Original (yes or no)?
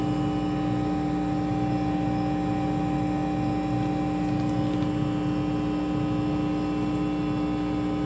yes